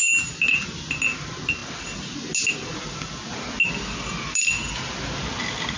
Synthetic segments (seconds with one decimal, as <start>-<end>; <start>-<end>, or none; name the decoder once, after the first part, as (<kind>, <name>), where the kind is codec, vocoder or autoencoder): none